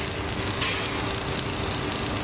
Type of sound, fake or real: real